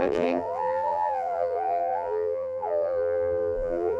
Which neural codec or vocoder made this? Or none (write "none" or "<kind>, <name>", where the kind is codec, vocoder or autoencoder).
vocoder, BigVGAN v2